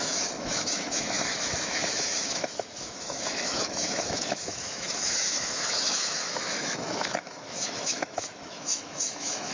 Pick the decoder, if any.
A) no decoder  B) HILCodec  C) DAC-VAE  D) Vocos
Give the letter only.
C